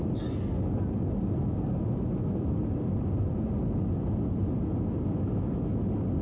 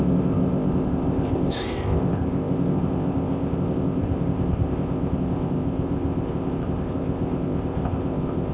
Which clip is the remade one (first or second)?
second